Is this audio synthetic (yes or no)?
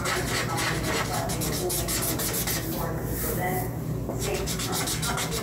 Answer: no